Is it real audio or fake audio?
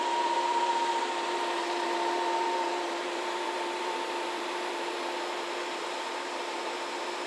fake